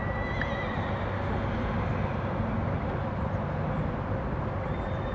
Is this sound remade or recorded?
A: recorded